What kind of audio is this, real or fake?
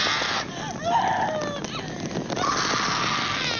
real